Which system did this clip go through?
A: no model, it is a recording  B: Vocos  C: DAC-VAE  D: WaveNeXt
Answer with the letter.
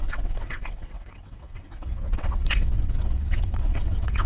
D